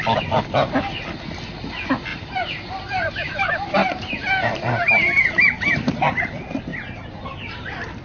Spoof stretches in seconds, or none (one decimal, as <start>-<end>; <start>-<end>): 2.1-5.9